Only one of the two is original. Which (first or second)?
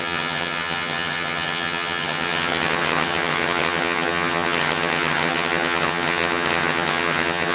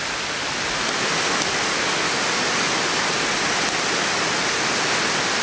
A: second